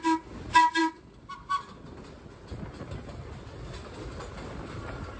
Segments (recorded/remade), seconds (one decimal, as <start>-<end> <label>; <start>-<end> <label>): 0.0-5.2 recorded